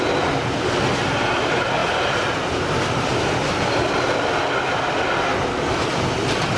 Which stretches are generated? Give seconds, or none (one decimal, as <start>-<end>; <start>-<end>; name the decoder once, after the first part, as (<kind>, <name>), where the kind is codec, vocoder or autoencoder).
none